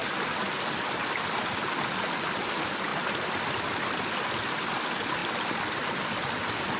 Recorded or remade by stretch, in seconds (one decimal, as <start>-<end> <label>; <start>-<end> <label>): 0.0-6.8 recorded